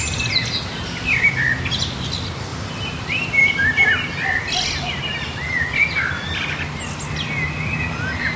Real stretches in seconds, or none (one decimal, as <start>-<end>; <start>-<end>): 0.0-2.5; 3.6-8.4